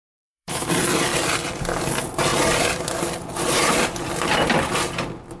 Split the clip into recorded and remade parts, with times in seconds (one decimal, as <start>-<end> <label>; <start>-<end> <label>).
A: 0.0-0.7 remade; 0.7-5.4 recorded